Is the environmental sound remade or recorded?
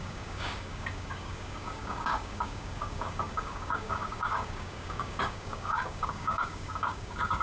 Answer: remade